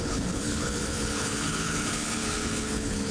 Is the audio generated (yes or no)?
yes